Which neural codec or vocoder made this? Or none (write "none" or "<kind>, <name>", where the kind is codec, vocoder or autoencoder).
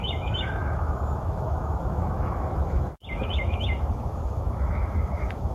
autoencoder, DAC-VAE